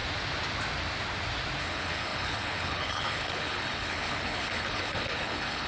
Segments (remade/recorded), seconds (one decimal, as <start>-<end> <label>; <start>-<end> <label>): 0.0-1.6 recorded; 1.6-5.7 remade